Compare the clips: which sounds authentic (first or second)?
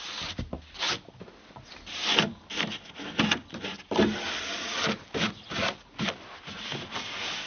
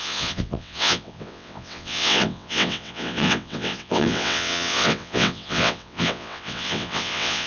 first